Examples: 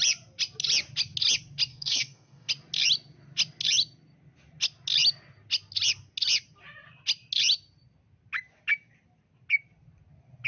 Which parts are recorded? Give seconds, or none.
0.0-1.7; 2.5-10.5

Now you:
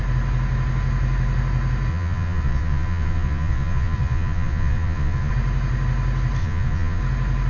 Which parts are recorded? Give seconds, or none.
0.0-1.9; 5.3-6.4; 7.0-7.5

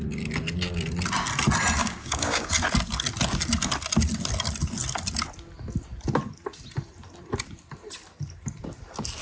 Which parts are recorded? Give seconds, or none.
0.0-1.8; 2.5-9.2

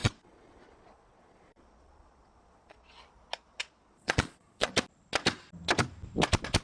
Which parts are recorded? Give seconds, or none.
3.0-3.5; 4.7-6.6